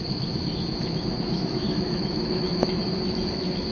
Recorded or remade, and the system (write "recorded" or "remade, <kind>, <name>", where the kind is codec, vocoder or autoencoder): remade, autoencoder, DAC-VAE